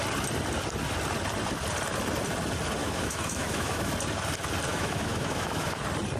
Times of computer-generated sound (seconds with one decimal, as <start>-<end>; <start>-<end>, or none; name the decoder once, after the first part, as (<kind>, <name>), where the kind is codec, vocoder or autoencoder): 2.8-3.9 (autoencoder, DAC-VAE); 4.7-5.8